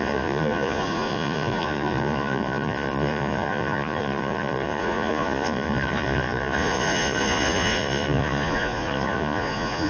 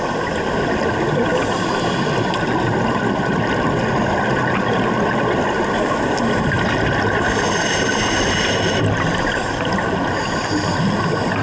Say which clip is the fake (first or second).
first